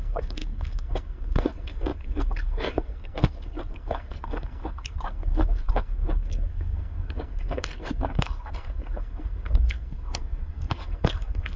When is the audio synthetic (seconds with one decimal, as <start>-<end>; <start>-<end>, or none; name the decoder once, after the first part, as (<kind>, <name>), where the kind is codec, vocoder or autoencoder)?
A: 0.0-11.6 (codec, SNAC)